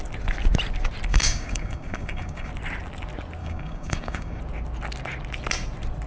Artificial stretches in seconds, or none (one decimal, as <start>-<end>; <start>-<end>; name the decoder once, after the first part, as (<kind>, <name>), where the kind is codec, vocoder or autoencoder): 1.1-2.5 (codec, DAC); 3.4-4.4